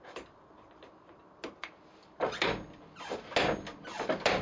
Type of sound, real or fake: real